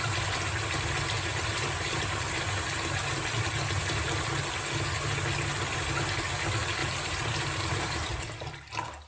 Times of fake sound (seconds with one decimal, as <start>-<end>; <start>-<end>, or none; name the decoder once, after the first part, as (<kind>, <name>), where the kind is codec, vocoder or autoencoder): 1.3-2.2 (vocoder, BigVGAN v2); 6.8-8.5